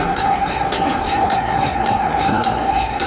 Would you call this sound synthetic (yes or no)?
yes